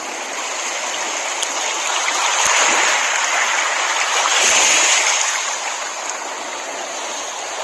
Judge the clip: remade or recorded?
recorded